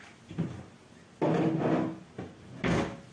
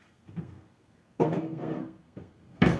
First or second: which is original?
first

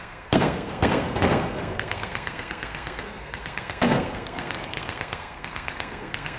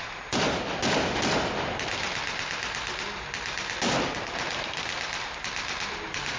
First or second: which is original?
second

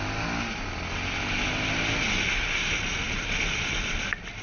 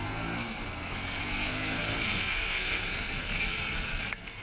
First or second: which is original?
first